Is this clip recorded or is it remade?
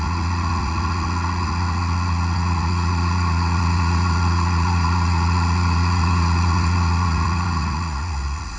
remade